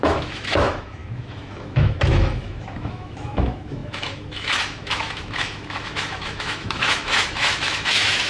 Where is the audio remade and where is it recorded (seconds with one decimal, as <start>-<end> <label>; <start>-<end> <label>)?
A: 0.0-8.3 remade